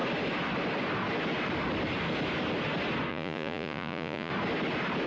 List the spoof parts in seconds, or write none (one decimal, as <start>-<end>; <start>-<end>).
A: 3.1-4.3